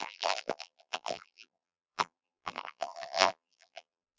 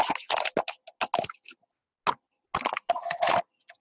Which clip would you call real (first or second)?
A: second